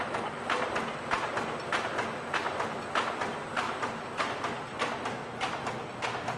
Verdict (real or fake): real